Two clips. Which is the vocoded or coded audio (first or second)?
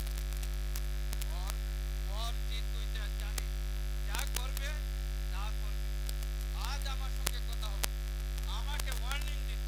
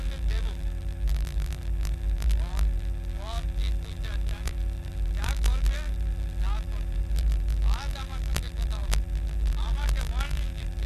second